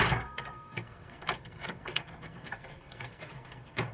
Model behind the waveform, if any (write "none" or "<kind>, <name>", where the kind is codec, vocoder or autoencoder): codec, SNAC